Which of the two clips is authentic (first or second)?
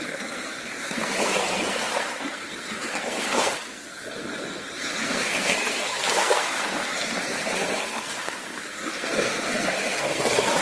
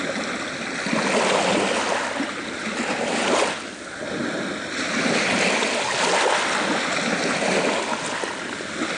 second